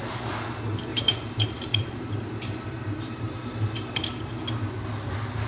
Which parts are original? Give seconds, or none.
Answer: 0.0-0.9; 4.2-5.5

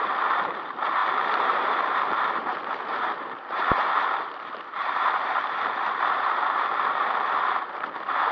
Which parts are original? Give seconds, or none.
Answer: none